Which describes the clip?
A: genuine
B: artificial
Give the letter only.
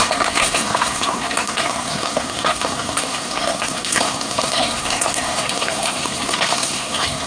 B